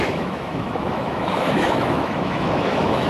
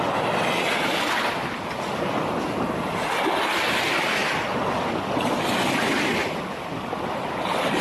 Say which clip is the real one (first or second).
second